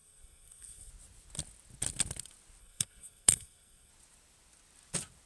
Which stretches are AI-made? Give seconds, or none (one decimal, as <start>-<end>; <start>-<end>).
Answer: 0.0-0.9; 2.6-3.9